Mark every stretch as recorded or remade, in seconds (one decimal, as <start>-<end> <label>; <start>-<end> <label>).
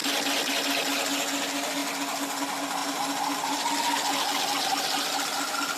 0.0-0.5 remade; 0.5-2.8 recorded; 2.8-3.8 remade; 3.8-5.8 recorded